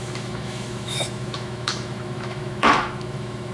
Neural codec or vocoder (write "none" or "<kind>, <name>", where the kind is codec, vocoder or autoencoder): autoencoder, DAC-VAE